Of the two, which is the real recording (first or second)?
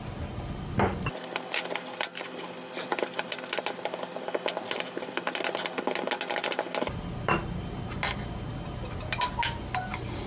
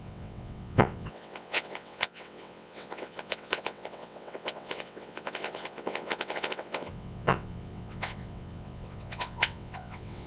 first